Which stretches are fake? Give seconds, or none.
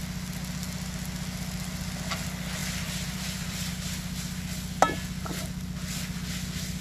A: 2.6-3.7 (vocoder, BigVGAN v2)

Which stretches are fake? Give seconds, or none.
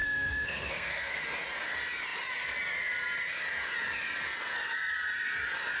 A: 0.0-1.2 (codec, SNAC)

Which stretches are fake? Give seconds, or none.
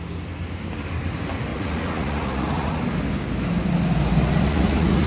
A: 1.5-2.8 (vocoder, Vocos); 4.2-5.1